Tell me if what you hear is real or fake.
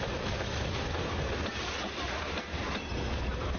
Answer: real